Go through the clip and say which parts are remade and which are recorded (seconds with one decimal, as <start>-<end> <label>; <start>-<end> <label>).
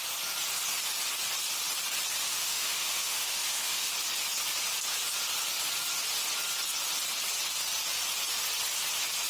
0.0-2.2 recorded; 2.2-3.9 remade; 3.9-9.3 recorded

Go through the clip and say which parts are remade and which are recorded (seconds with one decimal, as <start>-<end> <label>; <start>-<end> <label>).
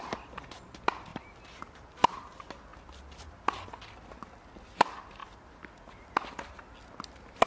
0.0-7.5 recorded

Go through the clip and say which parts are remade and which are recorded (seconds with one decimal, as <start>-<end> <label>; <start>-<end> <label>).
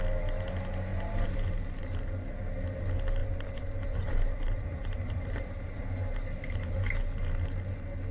0.0-0.9 recorded; 0.9-1.5 remade; 1.5-3.2 recorded; 3.2-5.8 remade; 5.8-8.1 recorded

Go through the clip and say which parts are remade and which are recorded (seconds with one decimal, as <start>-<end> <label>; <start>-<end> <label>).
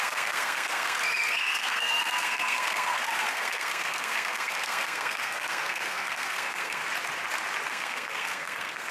0.0-6.8 remade; 6.8-7.7 recorded; 7.7-8.9 remade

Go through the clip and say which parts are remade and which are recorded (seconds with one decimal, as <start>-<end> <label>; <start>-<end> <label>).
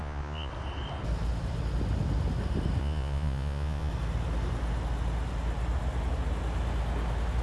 0.0-0.5 remade; 0.5-2.8 recorded; 2.8-3.9 remade; 3.9-7.4 recorded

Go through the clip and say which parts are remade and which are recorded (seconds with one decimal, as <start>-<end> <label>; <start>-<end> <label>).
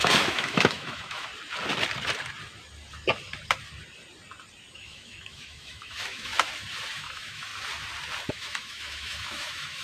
0.0-1.3 remade; 1.3-4.7 recorded; 4.7-6.3 remade; 6.3-6.9 recorded; 6.9-7.5 remade; 7.5-8.3 recorded; 8.3-9.8 remade